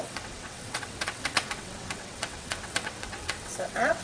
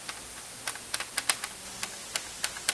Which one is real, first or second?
second